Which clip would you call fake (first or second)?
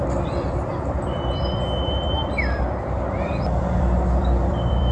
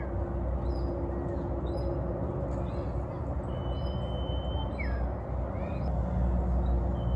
first